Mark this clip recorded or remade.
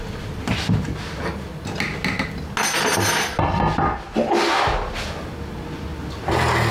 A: recorded